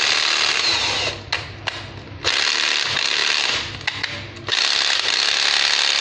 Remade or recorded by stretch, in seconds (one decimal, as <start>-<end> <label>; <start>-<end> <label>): 0.0-6.0 recorded

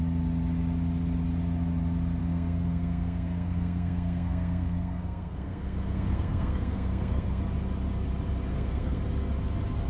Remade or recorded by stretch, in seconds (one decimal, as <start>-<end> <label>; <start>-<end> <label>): 0.0-2.2 recorded; 2.2-7.4 remade; 7.4-8.5 recorded; 8.5-9.0 remade; 9.0-9.9 recorded

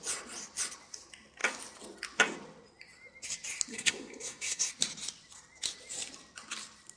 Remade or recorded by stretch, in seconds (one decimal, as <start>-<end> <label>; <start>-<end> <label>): 0.0-3.7 recorded; 3.7-4.7 remade; 4.7-7.0 recorded